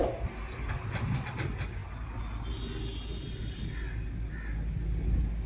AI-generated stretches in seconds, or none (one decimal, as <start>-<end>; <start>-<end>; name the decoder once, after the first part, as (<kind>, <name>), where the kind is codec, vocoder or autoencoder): none